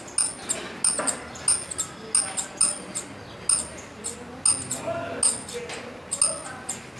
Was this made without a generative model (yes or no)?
yes